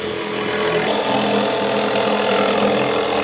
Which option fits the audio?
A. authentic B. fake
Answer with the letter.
A